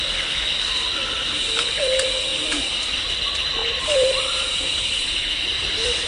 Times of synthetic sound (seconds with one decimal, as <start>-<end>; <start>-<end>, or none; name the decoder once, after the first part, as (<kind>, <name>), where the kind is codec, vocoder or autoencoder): 2.3-3.1 (vocoder, BigVGAN v2); 3.6-6.1